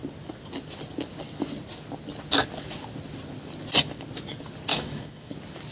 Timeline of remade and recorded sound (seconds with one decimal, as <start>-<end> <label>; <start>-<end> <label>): 0.0-4.7 recorded; 4.7-5.3 remade; 5.3-5.7 recorded